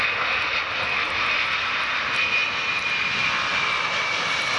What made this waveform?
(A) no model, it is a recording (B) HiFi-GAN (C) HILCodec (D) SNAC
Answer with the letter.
A